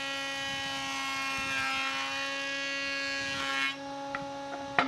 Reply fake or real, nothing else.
real